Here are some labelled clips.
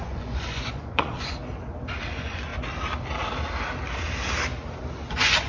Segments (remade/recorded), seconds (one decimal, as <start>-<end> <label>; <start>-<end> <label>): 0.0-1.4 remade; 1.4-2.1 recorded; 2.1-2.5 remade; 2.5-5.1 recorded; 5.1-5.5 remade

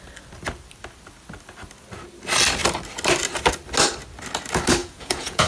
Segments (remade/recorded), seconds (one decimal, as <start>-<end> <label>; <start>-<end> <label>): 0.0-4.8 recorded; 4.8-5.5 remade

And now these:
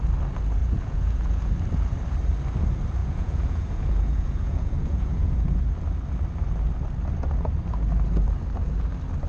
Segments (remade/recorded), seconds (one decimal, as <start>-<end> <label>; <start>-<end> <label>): 0.0-0.6 recorded; 0.6-1.5 remade; 1.5-3.0 recorded; 3.0-5.6 remade; 5.6-9.3 recorded

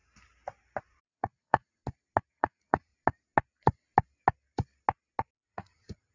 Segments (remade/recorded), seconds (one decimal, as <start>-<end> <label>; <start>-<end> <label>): 0.0-0.8 recorded; 0.8-1.8 remade; 1.8-2.3 recorded; 2.3-2.9 remade; 2.9-5.5 recorded; 5.5-6.1 remade

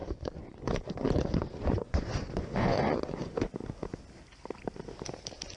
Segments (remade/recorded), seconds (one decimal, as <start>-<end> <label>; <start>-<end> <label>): 0.0-3.4 remade; 3.4-5.6 recorded